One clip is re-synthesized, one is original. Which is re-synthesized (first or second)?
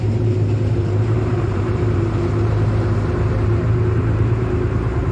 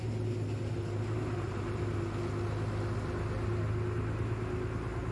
first